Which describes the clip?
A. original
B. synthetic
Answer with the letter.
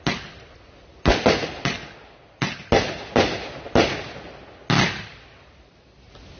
A